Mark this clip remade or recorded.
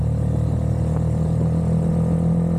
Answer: recorded